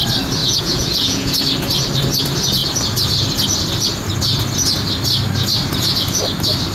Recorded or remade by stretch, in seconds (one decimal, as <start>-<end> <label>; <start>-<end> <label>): 0.0-0.4 recorded; 0.4-1.4 remade; 1.4-6.7 recorded